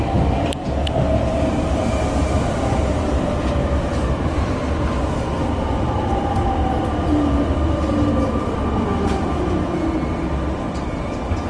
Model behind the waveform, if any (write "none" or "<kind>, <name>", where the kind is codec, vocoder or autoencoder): none